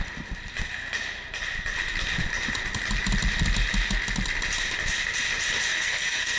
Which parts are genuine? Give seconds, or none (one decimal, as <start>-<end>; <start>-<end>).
0.0-5.7